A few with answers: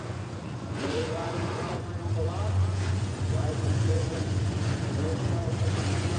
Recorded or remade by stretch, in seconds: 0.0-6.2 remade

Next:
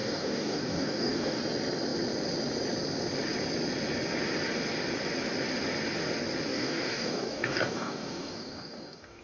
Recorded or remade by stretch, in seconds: 0.0-1.4 remade; 1.4-6.5 recorded; 6.5-9.2 remade

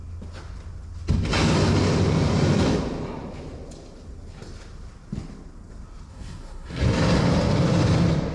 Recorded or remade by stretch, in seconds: 0.0-6.1 recorded; 6.1-6.8 remade; 6.8-8.3 recorded

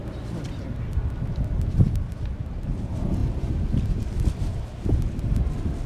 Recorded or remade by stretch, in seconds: 0.0-5.9 recorded

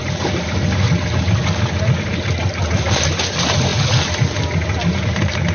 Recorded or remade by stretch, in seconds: 0.0-5.5 recorded

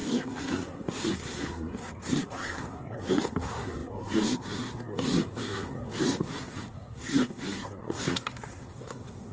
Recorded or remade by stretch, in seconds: 0.0-9.3 remade